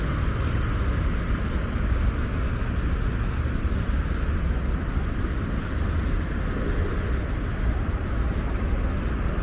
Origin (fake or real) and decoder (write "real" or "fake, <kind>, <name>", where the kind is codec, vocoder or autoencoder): real